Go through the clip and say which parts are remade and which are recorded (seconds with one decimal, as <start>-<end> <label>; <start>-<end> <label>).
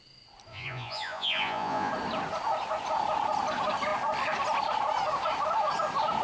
0.0-0.5 recorded; 0.5-1.9 remade; 1.9-6.2 recorded